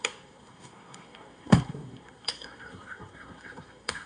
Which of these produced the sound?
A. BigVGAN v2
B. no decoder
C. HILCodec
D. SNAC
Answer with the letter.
D